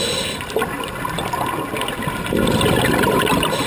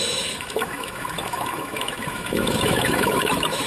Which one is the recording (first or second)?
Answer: first